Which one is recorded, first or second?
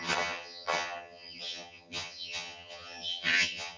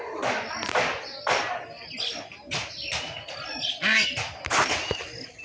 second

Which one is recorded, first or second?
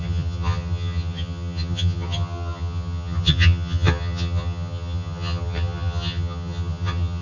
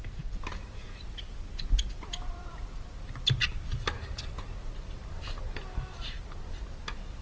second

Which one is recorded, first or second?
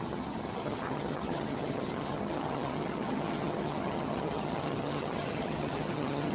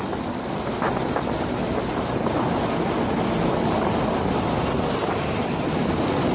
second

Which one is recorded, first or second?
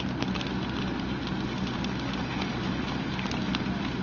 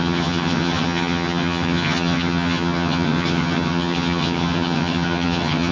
first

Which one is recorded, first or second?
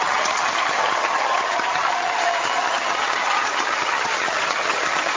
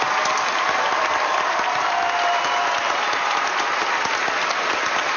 second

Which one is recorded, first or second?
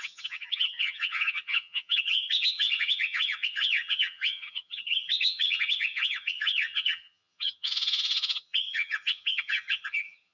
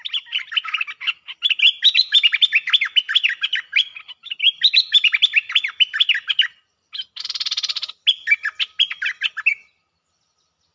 second